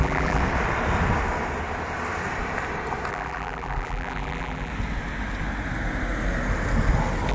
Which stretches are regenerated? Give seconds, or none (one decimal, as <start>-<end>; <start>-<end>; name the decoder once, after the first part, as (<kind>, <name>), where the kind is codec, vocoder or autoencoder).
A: 0.0-0.4 (vocoder, BigVGAN v2); 3.1-4.7